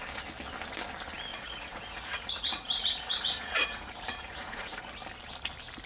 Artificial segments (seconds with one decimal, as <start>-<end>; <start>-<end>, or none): 1.3-4.8